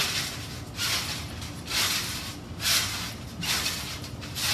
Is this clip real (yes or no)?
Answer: yes